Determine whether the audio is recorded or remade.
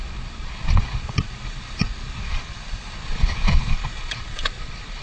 remade